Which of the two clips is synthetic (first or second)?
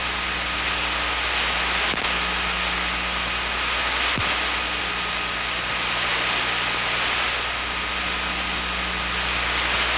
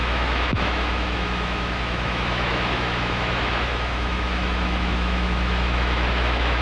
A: second